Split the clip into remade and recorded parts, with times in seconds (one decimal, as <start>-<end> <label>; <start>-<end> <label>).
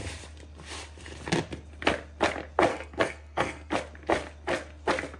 0.0-2.7 recorded; 2.7-3.7 remade; 3.7-5.2 recorded